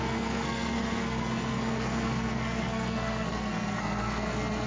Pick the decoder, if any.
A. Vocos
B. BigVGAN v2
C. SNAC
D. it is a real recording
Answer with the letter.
C